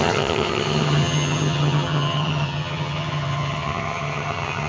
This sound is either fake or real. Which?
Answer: fake